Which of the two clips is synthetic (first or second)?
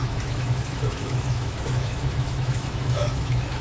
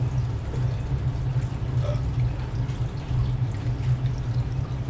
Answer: first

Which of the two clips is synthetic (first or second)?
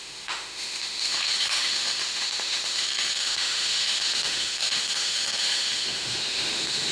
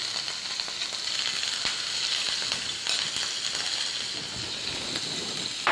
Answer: first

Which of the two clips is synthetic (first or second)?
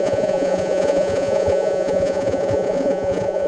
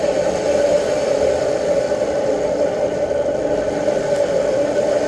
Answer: first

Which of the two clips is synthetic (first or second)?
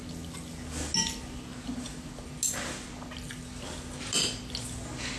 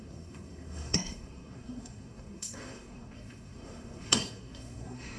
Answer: second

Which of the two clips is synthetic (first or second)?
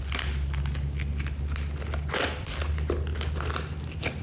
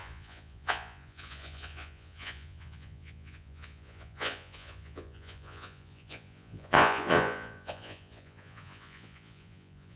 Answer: second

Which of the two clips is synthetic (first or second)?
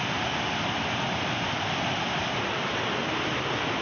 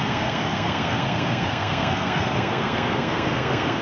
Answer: second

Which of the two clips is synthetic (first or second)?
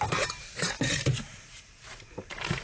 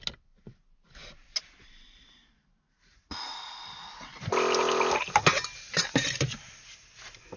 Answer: first